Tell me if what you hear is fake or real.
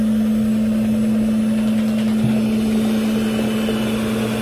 real